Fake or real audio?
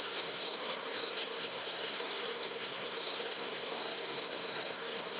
fake